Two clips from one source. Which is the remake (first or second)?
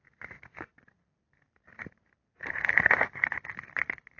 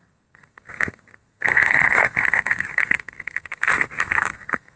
second